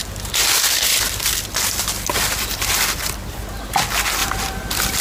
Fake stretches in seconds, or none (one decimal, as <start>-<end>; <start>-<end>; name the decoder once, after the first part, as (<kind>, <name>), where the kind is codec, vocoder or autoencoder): 0.9-2.8 (vocoder, BigVGAN v2); 4.2-5.0